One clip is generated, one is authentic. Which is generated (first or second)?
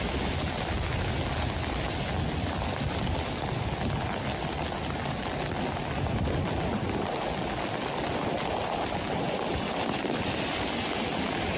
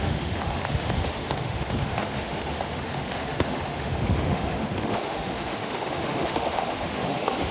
second